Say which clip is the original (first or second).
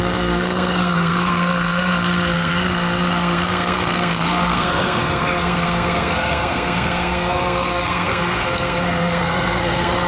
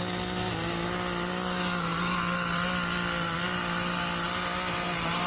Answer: second